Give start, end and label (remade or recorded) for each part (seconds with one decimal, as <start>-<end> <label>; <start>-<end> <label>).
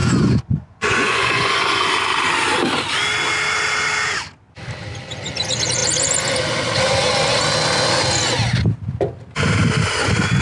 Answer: 0.0-1.9 remade; 1.9-10.4 recorded